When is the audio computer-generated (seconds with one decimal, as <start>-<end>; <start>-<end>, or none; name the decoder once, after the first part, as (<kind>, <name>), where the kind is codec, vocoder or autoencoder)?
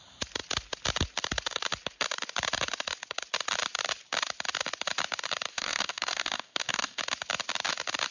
5.5-7.0 (codec, DAC)